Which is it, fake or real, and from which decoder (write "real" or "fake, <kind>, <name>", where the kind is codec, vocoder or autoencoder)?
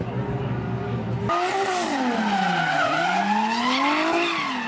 real